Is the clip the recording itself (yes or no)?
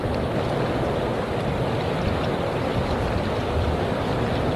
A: yes